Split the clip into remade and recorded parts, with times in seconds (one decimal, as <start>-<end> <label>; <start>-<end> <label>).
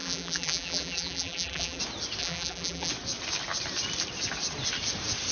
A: 0.0-1.8 remade; 1.8-2.2 recorded; 2.2-2.9 remade; 2.9-5.3 recorded